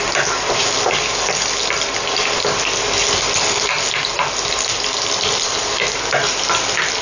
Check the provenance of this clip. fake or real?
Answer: real